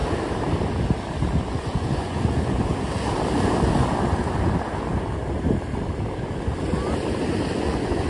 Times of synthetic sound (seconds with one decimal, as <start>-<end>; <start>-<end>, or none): 1.5-2.7; 7.5-8.1